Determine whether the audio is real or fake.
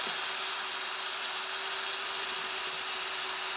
real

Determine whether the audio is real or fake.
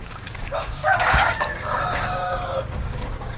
fake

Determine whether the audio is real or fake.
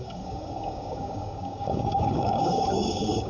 fake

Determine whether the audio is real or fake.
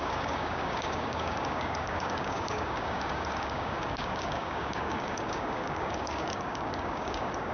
fake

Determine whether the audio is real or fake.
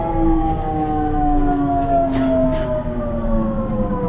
fake